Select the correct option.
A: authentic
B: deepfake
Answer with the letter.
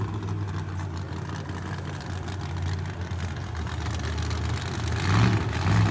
A